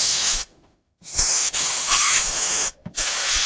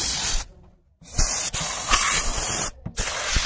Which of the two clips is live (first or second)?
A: second